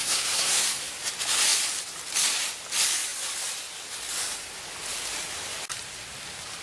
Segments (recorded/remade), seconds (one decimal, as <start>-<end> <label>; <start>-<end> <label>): 0.0-0.9 remade; 0.9-6.6 recorded